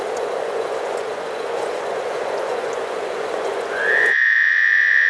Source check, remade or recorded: remade